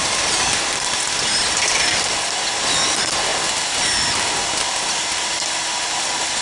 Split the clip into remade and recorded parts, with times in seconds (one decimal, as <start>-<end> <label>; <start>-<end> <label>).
0.0-6.4 recorded

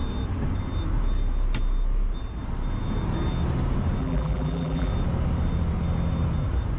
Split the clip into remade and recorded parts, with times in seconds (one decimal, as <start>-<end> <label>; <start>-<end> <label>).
0.0-4.0 recorded; 4.0-4.9 remade; 4.9-6.8 recorded

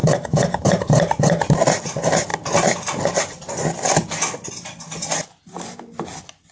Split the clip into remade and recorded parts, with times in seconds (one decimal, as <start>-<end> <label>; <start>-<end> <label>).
0.0-0.8 remade; 0.8-6.5 recorded

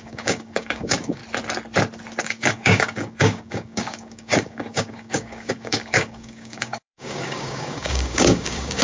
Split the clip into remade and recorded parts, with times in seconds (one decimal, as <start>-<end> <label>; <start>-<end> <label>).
0.0-1.2 remade; 1.2-2.2 recorded; 2.2-8.8 remade